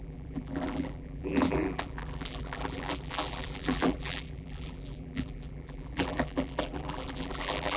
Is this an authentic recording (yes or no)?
no